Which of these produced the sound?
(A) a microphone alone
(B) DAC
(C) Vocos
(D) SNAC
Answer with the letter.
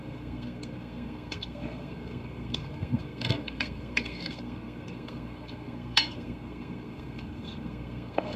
D